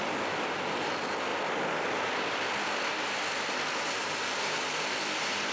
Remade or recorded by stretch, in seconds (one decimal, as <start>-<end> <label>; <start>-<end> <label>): 0.0-5.5 recorded